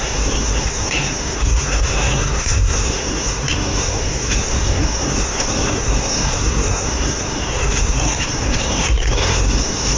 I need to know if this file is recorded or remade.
remade